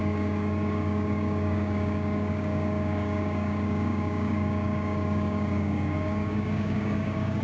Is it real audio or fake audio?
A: fake